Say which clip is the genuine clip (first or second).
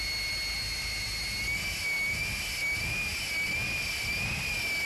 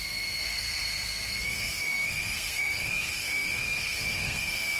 first